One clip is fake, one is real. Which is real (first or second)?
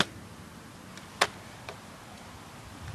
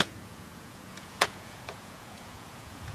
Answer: first